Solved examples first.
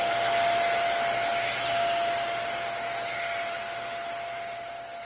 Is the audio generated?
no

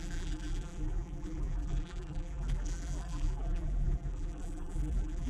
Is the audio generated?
yes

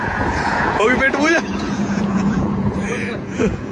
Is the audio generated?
yes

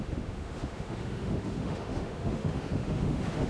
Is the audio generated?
yes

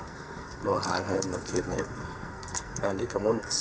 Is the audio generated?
yes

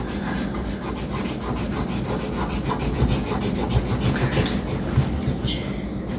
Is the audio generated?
no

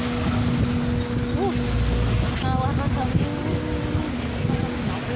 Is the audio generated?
no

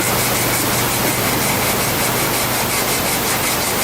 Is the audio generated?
no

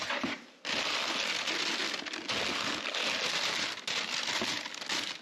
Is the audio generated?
no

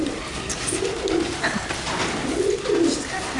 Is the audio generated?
no